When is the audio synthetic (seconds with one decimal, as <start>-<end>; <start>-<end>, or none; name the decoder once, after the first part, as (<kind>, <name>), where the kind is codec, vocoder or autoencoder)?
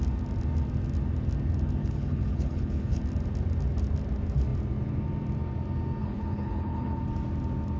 1.8-3.0 (codec, HILCodec); 6.0-7.0